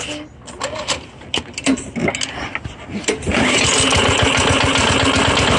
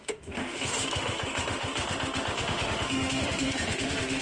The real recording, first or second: first